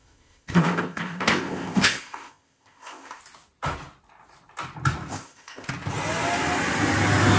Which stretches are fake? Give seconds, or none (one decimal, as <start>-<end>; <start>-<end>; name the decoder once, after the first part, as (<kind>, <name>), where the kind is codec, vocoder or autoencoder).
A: 0.0-3.2 (codec, ZipCodec); 5.1-5.7